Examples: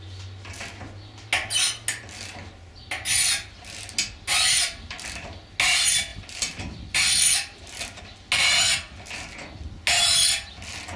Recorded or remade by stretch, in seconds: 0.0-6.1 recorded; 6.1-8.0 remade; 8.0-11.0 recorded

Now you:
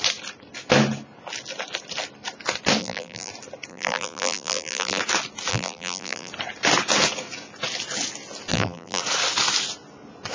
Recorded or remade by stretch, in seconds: 0.0-2.8 recorded; 2.8-3.3 remade; 3.3-3.7 recorded; 3.7-5.0 remade; 5.0-5.5 recorded; 5.5-6.3 remade; 6.3-8.5 recorded; 8.5-9.0 remade; 9.0-10.3 recorded

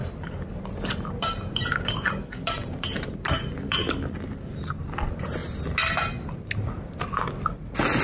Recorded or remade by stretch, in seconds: 0.0-3.9 remade; 3.9-8.0 recorded

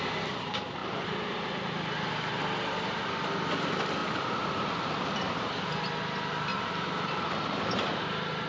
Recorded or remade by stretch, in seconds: 0.0-0.8 recorded; 0.8-2.3 remade; 2.3-4.0 recorded; 4.0-5.0 remade; 5.0-6.5 recorded; 6.5-7.9 remade; 7.9-8.5 recorded

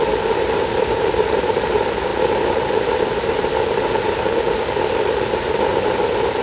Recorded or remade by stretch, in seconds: 0.0-2.1 remade; 2.1-3.9 recorded; 3.9-6.4 remade

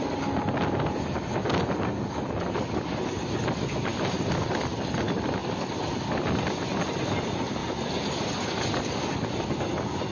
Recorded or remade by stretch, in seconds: 0.0-5.4 recorded; 5.4-6.6 remade; 6.6-10.1 recorded